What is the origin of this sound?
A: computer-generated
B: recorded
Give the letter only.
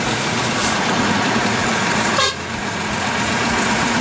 A